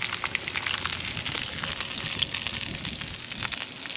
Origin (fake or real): real